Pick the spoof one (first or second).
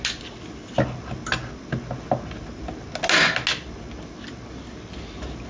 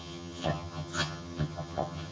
second